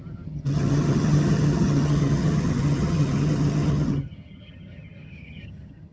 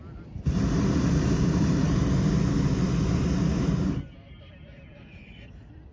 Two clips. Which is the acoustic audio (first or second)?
second